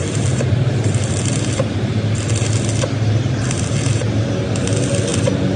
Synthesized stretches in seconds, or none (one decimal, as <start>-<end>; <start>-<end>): 0.0-1.1